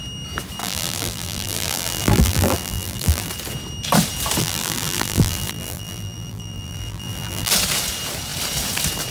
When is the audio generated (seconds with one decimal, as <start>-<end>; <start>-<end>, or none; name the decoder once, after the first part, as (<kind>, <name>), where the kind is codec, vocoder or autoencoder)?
0.6-3.3 (vocoder, BigVGAN v2); 4.4-7.5